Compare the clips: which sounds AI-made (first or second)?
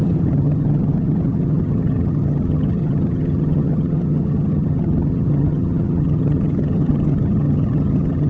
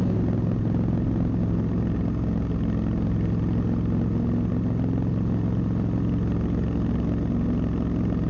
first